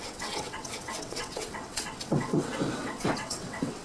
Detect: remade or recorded remade